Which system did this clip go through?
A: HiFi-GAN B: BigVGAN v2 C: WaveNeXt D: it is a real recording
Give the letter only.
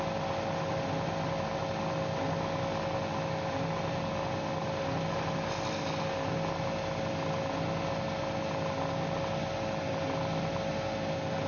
D